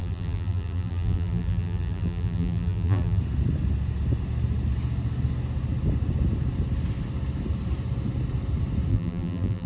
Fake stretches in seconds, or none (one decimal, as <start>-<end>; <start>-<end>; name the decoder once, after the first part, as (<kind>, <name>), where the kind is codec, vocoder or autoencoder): 0.0-3.2 (vocoder, BigVGAN v2); 8.9-9.7